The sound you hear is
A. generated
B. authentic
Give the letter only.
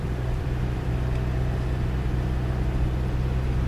A